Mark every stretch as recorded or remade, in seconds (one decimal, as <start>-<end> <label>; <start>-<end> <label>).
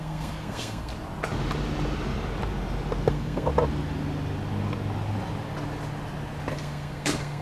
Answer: 0.0-0.9 remade; 0.9-3.1 recorded; 3.1-3.5 remade; 3.5-6.5 recorded; 6.5-7.4 remade